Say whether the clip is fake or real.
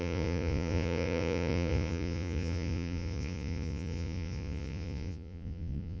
fake